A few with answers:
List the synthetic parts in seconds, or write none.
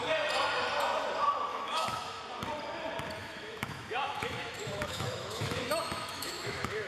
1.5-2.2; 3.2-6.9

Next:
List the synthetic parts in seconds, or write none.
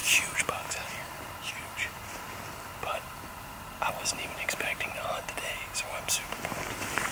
0.0-1.5; 2.9-4.9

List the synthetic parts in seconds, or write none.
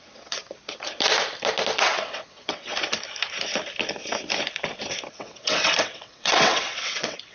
0.0-0.4; 1.8-2.7; 5.1-7.3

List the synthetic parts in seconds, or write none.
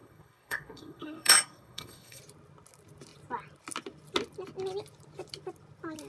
0.0-2.2